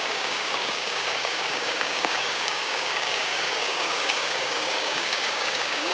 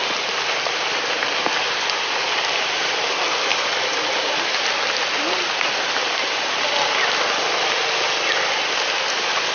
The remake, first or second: first